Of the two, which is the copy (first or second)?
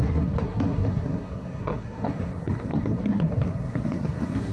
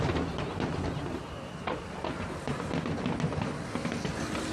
first